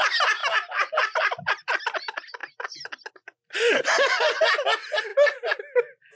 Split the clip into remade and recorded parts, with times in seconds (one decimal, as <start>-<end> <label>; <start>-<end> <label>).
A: 0.0-0.4 remade; 0.4-1.2 recorded; 1.2-2.4 remade; 2.4-3.1 recorded; 3.1-5.1 remade; 5.1-6.2 recorded